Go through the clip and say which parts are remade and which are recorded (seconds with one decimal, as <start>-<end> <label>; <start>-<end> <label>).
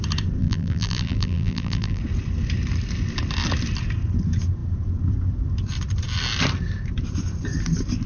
0.0-0.4 recorded; 0.4-2.0 remade; 2.0-8.1 recorded